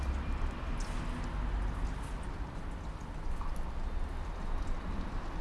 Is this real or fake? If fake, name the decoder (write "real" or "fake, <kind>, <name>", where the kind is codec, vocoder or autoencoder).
real